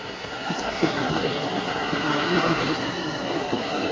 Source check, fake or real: fake